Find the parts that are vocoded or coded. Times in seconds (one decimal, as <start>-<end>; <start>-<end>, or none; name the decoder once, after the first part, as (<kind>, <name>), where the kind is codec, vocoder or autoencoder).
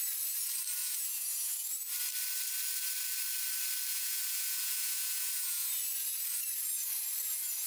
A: 0.8-1.7 (vocoder, Vocos); 3.9-5.7